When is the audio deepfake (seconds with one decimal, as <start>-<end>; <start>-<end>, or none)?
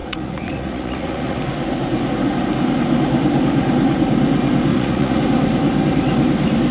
0.0-1.4; 4.7-5.2